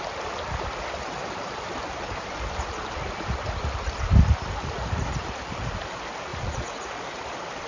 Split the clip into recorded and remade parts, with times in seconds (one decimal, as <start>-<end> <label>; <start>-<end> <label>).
0.0-6.3 recorded; 6.3-6.9 remade; 6.9-7.7 recorded